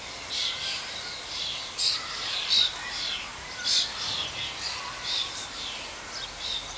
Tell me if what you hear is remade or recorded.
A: recorded